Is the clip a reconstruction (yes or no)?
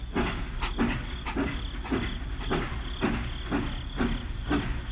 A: no